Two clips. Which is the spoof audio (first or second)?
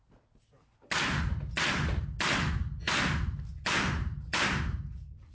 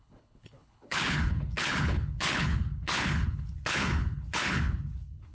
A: second